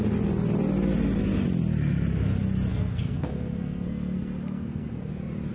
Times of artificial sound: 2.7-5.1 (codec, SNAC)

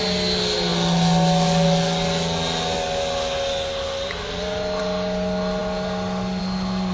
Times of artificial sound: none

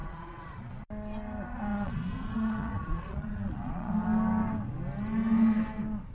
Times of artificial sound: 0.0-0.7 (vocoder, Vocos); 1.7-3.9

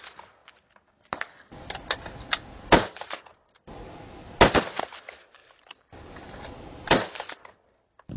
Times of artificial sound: 0.0-0.4 (vocoder, BigVGAN v2); 4.5-8.2